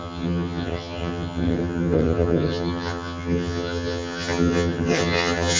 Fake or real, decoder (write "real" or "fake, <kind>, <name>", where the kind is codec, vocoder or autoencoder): fake, vocoder, HiFi-GAN